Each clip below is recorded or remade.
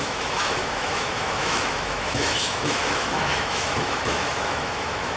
remade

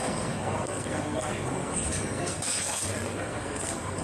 remade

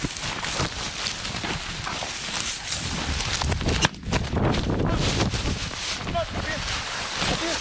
recorded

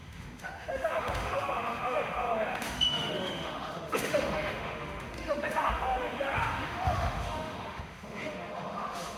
remade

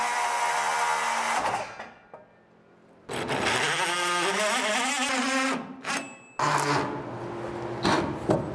recorded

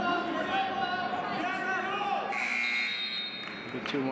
recorded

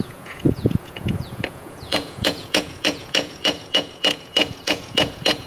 remade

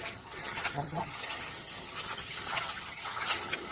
remade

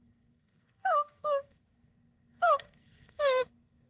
remade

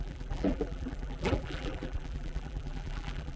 remade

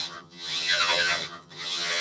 remade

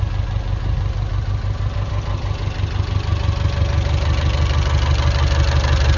recorded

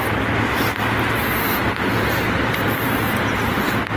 recorded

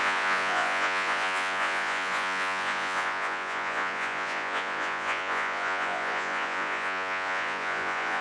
remade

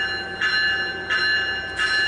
recorded